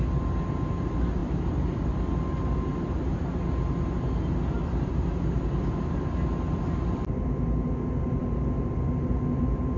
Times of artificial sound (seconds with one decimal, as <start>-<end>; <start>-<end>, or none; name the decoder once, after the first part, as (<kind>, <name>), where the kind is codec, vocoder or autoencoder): none